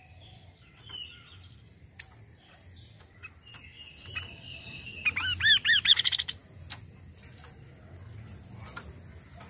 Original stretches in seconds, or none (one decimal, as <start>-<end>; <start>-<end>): 0.0-9.5